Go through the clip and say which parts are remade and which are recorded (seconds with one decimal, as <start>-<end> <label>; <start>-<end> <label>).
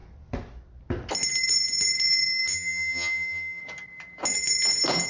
0.0-2.5 recorded; 2.5-3.6 remade; 3.6-5.1 recorded